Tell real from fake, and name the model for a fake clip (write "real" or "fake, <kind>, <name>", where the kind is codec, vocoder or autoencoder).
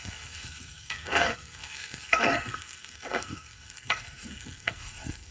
fake, codec, SNAC